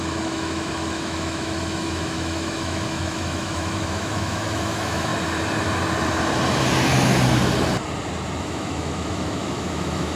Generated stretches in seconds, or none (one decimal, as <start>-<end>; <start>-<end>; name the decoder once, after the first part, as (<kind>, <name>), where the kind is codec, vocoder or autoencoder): 0.0-5.1 (autoencoder, DAC-VAE); 8.4-10.2